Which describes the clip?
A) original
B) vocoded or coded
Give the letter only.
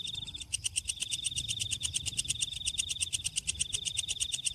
B